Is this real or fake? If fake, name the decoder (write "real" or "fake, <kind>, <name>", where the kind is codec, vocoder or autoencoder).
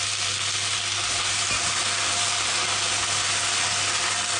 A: real